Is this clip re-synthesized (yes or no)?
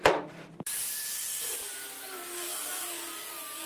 yes